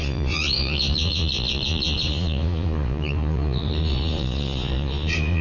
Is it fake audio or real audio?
fake